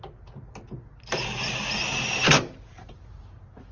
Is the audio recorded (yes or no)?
yes